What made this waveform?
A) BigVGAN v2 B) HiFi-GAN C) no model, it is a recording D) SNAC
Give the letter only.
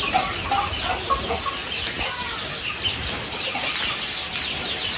C